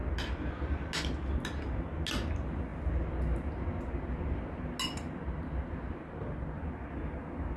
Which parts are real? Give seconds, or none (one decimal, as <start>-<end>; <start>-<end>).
0.0-7.6